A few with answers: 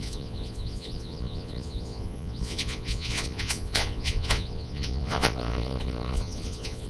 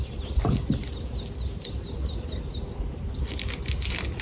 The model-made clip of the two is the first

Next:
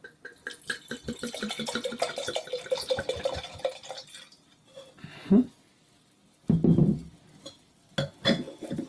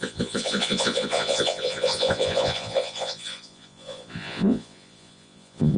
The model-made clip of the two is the second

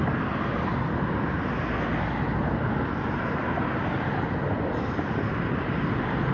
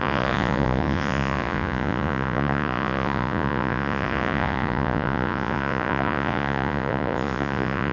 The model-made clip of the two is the second